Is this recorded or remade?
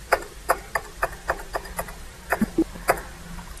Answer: remade